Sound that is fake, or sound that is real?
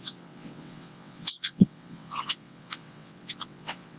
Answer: fake